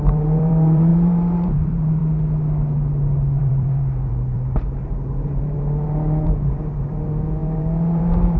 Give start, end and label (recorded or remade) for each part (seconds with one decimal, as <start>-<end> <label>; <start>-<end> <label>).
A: 0.0-2.0 remade; 2.0-3.4 recorded; 3.4-8.4 remade